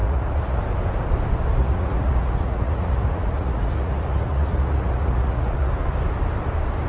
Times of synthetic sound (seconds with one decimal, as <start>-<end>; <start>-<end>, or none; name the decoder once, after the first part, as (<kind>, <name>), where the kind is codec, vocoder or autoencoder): 0.0-0.6 (vocoder, Vocos); 1.6-5.7